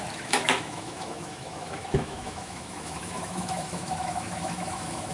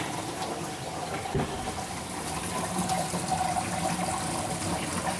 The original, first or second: second